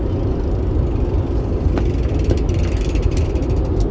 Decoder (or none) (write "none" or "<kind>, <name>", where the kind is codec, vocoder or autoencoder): none